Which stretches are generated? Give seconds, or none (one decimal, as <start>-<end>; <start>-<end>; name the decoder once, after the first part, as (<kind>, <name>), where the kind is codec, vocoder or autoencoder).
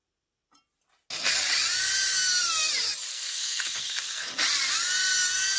3.1-4.3 (codec, SNAC)